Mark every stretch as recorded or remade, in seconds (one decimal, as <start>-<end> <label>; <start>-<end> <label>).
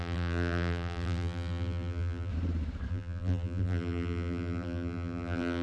0.0-2.3 remade; 2.3-2.9 recorded; 2.9-5.6 remade